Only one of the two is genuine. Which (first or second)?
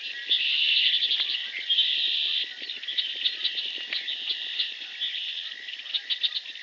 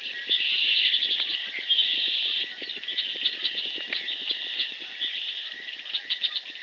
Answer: first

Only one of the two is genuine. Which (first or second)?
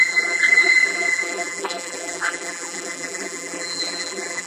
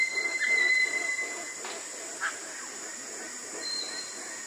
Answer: second